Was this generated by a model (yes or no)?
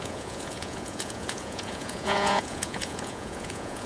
yes